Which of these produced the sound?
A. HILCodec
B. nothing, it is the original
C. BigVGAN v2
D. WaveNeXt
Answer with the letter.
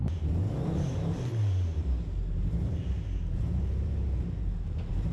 C